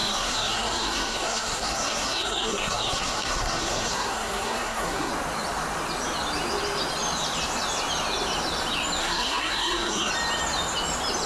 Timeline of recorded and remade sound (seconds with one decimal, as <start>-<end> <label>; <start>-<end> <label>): 0.0-5.1 remade; 5.1-9.0 recorded; 9.0-10.1 remade; 10.1-11.3 recorded